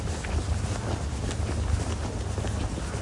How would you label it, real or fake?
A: real